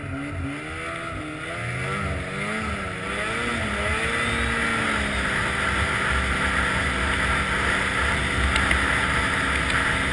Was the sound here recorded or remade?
recorded